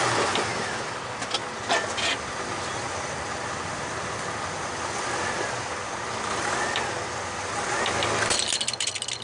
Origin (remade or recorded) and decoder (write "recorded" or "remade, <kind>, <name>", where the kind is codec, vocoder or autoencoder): recorded